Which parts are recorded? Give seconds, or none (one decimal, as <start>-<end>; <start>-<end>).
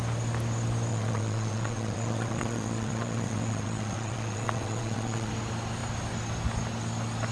0.0-0.9; 5.3-7.3